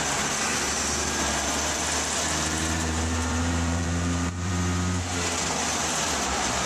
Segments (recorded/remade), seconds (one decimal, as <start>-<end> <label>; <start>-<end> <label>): 0.0-0.5 recorded; 0.5-4.5 remade; 4.5-6.7 recorded